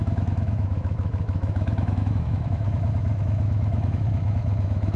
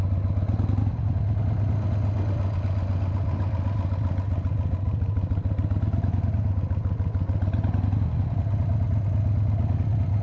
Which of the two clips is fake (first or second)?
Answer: first